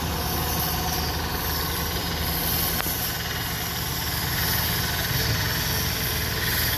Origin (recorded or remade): recorded